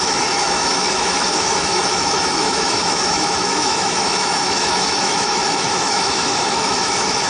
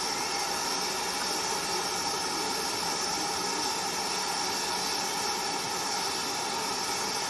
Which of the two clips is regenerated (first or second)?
first